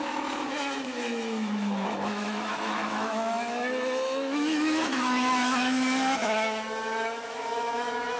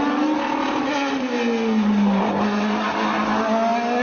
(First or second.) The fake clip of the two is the first